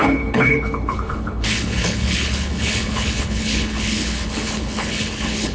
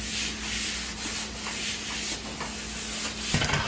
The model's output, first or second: first